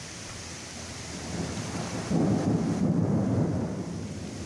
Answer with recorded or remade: recorded